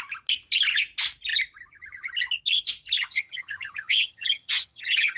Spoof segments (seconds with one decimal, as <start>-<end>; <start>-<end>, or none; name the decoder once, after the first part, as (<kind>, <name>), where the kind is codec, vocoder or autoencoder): 3.1-5.2 (vocoder, HiFi-GAN)